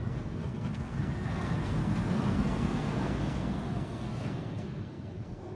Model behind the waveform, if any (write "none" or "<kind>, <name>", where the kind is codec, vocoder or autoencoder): codec, SNAC